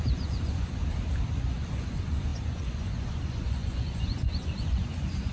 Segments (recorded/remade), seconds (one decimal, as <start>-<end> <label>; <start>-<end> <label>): 0.0-0.8 remade; 0.8-1.4 recorded; 1.4-5.3 remade